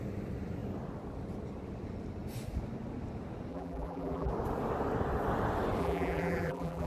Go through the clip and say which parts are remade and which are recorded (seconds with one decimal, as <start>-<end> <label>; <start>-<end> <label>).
0.0-3.5 recorded; 3.5-4.3 remade; 4.3-5.8 recorded; 5.8-6.9 remade